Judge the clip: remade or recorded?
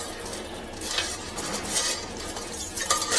recorded